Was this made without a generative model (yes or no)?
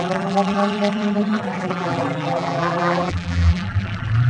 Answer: no